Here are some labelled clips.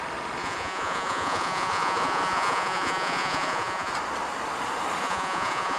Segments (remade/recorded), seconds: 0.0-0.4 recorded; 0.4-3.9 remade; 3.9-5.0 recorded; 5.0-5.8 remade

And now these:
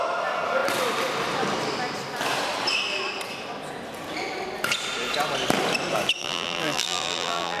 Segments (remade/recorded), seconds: 0.0-6.2 recorded; 6.2-7.6 remade

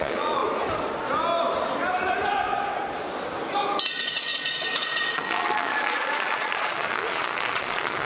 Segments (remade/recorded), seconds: 0.0-0.4 remade; 0.4-3.9 recorded; 3.9-8.1 remade

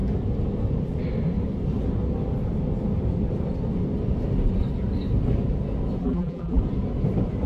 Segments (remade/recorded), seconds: 0.0-6.0 recorded; 6.0-6.6 remade; 6.6-7.5 recorded

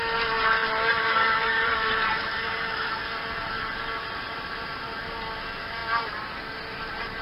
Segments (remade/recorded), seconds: 0.0-0.6 recorded; 0.6-2.5 remade; 2.5-7.2 recorded

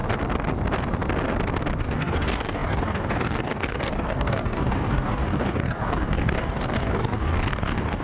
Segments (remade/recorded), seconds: 0.0-1.8 recorded; 1.8-8.0 remade